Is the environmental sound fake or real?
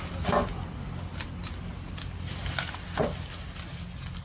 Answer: real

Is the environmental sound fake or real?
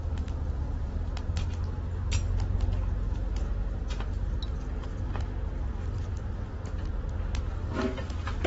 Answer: real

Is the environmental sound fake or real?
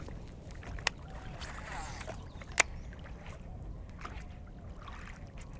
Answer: real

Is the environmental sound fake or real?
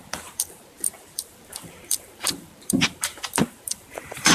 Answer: fake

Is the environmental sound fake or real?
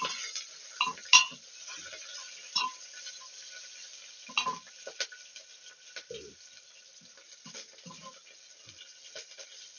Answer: real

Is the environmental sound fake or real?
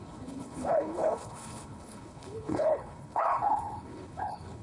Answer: fake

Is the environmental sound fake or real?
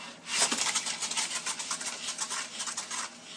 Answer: real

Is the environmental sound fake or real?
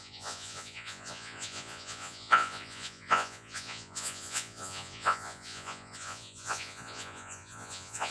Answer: fake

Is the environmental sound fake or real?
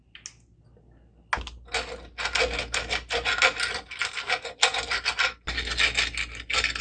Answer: real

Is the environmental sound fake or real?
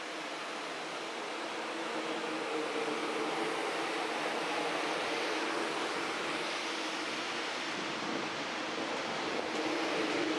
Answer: real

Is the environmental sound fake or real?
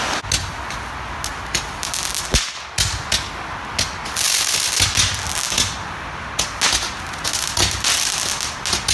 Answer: real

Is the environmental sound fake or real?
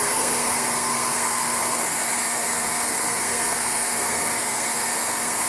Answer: fake